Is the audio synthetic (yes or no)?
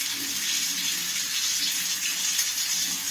no